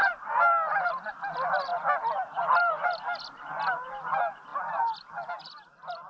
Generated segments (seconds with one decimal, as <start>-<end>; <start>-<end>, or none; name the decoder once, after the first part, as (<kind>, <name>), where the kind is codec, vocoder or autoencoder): 1.7-2.7 (vocoder, BigVGAN v2)